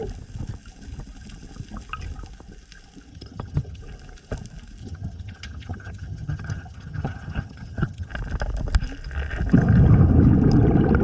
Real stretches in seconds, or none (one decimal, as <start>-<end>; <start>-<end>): 0.0-3.1; 3.8-4.8; 8.1-11.0